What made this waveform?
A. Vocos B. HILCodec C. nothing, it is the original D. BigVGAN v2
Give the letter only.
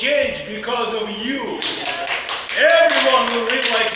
C